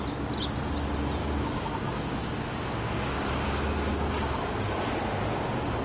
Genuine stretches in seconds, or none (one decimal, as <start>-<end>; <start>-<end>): 0.0-1.2; 4.7-5.8